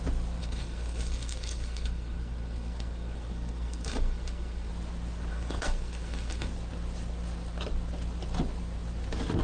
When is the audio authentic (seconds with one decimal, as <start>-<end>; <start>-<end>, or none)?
0.0-0.4; 4.7-5.3; 6.5-9.4